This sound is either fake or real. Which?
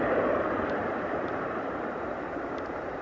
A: fake